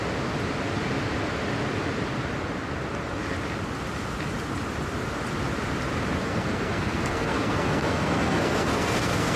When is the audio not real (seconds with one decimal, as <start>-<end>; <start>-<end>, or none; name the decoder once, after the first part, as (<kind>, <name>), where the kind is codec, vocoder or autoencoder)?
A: 6.2-9.4 (codec, SNAC)